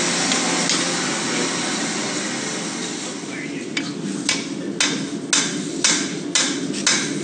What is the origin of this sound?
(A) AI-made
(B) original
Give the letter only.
B